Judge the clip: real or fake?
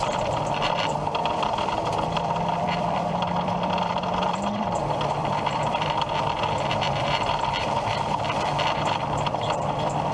fake